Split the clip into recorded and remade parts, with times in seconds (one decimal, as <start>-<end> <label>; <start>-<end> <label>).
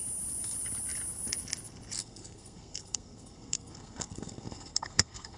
0.0-2.0 recorded; 2.0-5.4 remade